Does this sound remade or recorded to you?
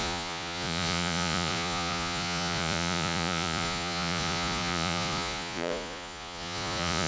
remade